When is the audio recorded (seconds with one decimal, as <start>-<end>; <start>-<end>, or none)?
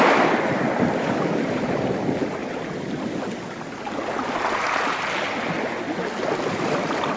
2.4-6.6